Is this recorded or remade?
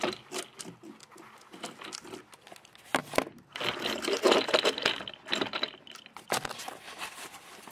recorded